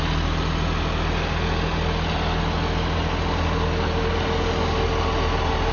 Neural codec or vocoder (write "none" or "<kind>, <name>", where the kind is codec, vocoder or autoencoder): none